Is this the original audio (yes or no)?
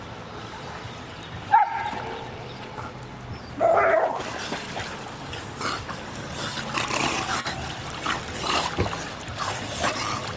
yes